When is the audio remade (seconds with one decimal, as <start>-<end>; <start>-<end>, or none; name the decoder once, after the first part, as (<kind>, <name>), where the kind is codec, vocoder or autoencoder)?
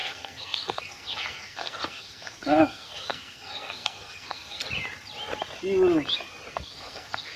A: 0.0-4.6 (codec, SNAC); 6.5-7.4